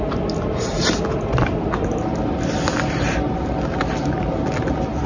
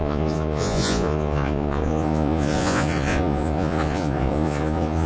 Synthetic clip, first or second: second